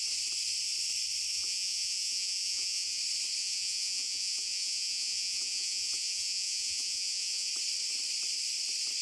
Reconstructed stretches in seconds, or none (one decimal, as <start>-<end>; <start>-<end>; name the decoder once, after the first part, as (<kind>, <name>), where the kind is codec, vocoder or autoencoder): 1.3-3.0 (vocoder, Vocos); 3.4-7.5